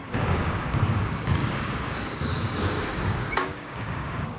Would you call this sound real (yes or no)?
no